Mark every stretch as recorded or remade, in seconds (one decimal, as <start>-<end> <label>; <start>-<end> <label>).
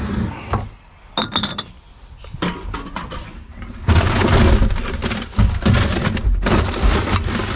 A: 0.0-7.6 recorded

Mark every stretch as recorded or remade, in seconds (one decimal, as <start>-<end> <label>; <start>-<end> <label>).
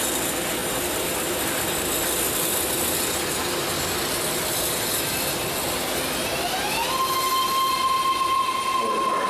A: 0.0-9.3 recorded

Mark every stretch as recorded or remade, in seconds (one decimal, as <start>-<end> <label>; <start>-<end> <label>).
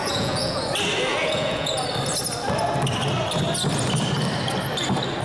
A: 0.0-0.6 remade; 0.6-1.1 recorded; 1.1-1.7 remade; 1.7-5.2 recorded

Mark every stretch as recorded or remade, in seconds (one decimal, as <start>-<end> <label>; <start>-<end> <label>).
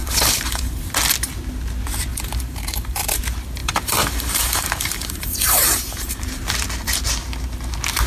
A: 0.0-0.8 remade; 0.8-2.1 recorded; 2.1-3.2 remade; 3.2-3.6 recorded; 3.6-6.1 remade; 6.1-8.1 recorded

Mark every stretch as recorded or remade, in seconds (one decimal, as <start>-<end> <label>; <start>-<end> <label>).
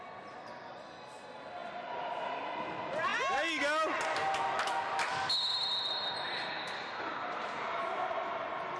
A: 0.0-8.8 recorded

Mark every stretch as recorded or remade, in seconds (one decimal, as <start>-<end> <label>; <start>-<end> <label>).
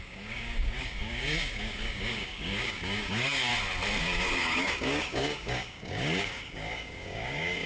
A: 0.0-3.5 remade; 3.5-4.0 recorded; 4.0-7.7 remade